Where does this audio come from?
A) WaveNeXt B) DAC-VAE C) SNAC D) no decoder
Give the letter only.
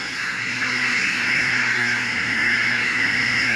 C